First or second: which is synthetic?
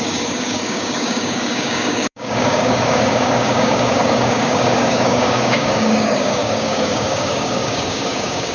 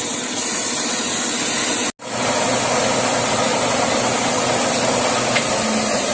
first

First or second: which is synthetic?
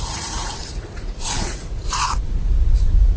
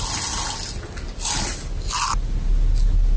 first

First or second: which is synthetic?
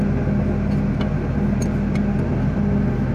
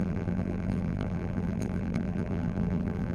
second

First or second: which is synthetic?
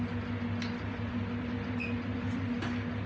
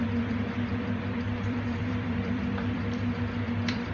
second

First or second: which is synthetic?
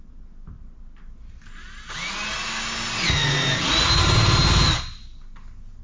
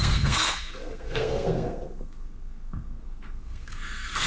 second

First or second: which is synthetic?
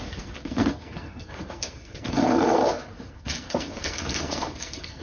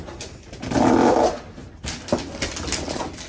first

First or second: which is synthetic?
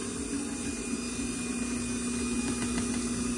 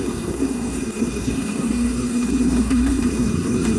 second